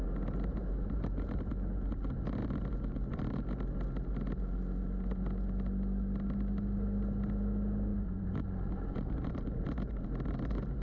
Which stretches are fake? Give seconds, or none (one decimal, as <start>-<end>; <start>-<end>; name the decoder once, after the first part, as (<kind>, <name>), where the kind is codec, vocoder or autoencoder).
0.5-1.5 (vocoder, BigVGAN v2); 7.9-9.9